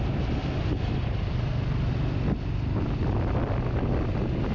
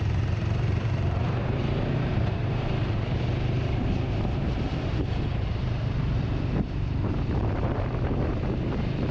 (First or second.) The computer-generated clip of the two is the second